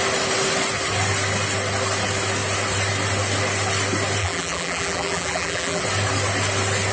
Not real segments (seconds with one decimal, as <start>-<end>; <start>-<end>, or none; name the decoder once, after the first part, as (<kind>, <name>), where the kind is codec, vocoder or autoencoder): 4.2-5.8 (vocoder, BigVGAN v2)